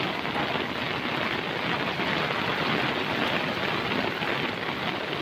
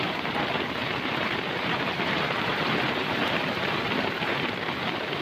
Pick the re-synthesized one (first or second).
second